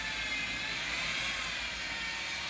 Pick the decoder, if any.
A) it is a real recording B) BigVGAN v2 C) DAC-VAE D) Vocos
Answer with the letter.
A